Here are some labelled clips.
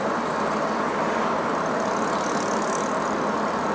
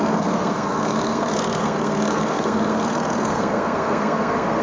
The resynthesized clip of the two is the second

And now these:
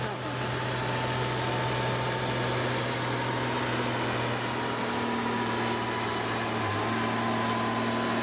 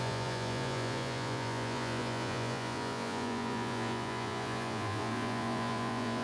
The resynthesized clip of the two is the second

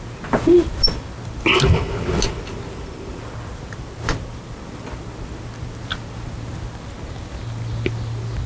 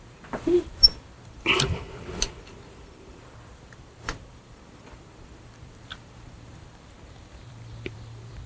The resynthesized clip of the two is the second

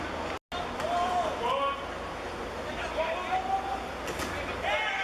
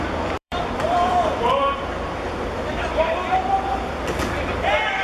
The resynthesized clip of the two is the second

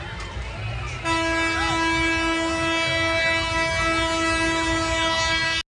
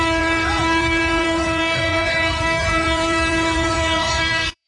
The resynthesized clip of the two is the second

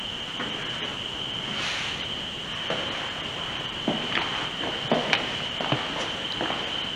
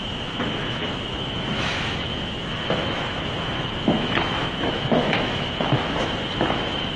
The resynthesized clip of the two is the second